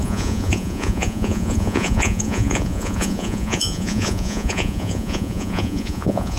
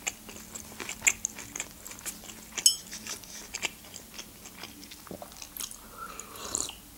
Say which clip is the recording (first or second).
second